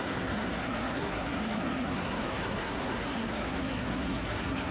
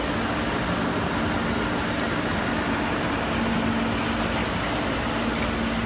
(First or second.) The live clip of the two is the second